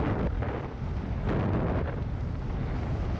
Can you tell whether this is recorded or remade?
recorded